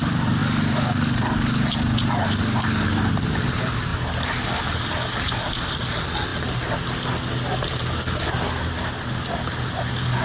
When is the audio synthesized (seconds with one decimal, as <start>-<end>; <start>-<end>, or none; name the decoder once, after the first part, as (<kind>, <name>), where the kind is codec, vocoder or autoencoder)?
0.4-2.4 (vocoder, BigVGAN v2); 6.3-7.1